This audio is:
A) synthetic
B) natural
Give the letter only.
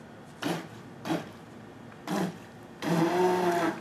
B